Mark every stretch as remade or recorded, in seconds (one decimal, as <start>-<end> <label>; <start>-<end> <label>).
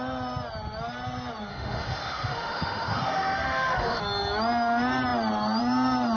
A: 0.0-1.5 recorded; 1.5-4.0 remade; 4.0-6.2 recorded